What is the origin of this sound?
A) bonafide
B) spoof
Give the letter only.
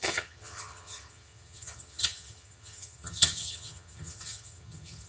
B